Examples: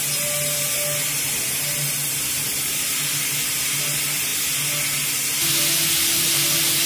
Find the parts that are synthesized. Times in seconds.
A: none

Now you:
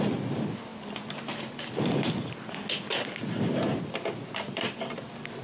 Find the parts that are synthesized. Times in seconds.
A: 0.0-0.7 (vocoder, BigVGAN v2); 3.8-5.4

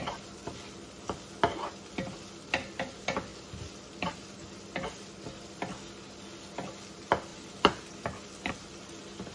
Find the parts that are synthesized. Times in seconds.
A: 3.3-4.5 (vocoder, BigVGAN v2); 7.3-8.5

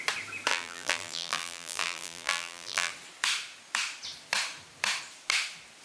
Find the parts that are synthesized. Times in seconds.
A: 0.5-2.9 (vocoder, BigVGAN v2)

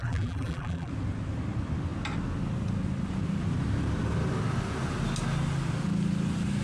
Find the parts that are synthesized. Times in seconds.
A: 0.0-0.9 (vocoder, BigVGAN v2)